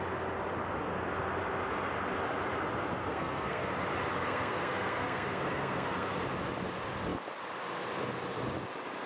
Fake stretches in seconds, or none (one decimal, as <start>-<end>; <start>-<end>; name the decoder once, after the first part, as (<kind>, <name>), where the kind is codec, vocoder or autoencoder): 3.0-3.7 (codec, SNAC); 4.2-6.1